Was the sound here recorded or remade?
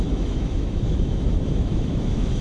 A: remade